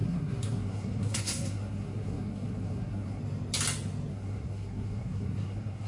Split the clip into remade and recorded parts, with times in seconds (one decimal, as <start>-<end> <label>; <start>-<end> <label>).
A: 0.0-3.2 remade; 3.2-4.1 recorded; 4.1-5.9 remade